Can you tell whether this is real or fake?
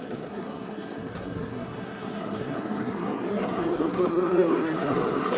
fake